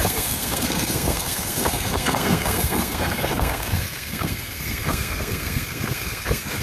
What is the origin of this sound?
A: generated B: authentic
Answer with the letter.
A